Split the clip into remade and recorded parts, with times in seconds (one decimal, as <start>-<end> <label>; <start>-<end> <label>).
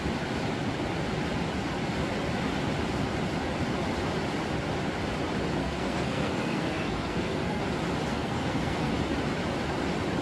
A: 0.0-5.6 recorded; 5.6-7.6 remade; 7.6-8.1 recorded; 8.1-8.9 remade; 8.9-10.2 recorded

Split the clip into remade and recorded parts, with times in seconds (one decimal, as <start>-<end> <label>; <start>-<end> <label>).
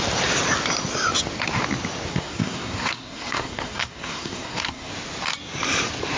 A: 0.0-2.1 recorded; 2.1-4.9 remade; 4.9-6.2 recorded